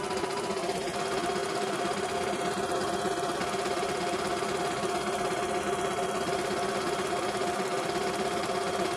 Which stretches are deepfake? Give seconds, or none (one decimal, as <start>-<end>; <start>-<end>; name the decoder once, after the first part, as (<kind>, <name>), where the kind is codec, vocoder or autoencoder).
1.4-4.6 (vocoder, BigVGAN v2); 7.4-9.0

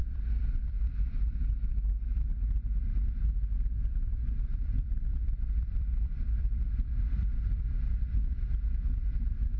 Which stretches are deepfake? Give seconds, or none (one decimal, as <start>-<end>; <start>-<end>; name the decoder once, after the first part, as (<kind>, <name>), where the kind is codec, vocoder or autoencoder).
0.0-1.2 (vocoder, BigVGAN v2); 4.5-8.4

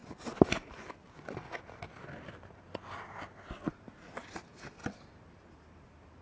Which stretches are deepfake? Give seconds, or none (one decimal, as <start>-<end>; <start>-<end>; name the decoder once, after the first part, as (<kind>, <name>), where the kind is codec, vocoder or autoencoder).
3.7-4.8 (vocoder, BigVGAN v2); 5.3-6.2

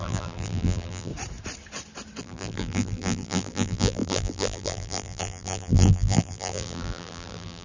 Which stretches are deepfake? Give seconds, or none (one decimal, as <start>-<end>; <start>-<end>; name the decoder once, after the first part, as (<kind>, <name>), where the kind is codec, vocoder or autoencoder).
0.0-1.1 (vocoder, BigVGAN v2); 2.2-7.6

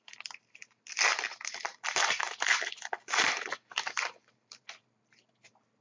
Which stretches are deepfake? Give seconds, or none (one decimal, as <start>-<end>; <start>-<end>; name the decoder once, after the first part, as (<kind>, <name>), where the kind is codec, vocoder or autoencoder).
0.0-1.7 (vocoder, BigVGAN v2); 3.2-5.8

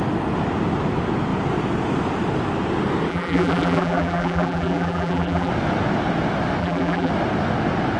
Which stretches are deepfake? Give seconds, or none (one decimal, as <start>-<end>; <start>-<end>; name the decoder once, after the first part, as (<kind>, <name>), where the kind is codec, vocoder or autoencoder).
3.1-5.5 (vocoder, BigVGAN v2); 6.6-7.1